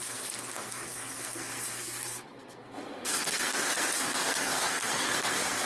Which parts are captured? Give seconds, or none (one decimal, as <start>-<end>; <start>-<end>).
none